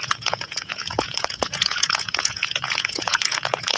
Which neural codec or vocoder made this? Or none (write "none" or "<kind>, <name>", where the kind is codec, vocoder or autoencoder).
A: vocoder, Vocos